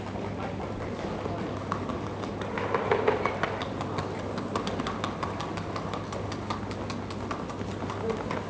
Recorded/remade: recorded